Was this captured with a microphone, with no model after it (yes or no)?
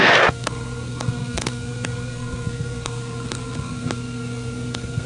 no